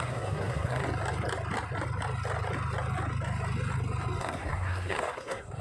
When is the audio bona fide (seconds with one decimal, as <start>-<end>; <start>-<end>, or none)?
0.8-4.2